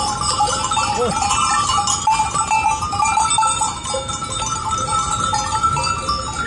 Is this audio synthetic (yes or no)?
yes